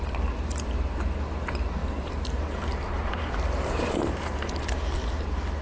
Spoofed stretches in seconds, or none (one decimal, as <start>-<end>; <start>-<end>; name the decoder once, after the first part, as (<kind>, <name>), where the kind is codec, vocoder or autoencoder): 1.8-4.7 (vocoder, BigVGAN v2)